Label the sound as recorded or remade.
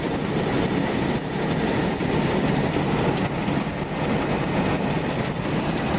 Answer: recorded